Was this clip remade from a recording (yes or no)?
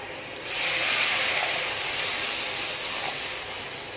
no